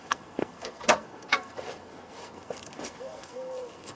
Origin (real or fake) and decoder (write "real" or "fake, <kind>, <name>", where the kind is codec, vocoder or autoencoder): fake, codec, SNAC